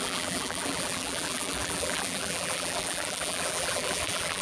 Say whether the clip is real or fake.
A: fake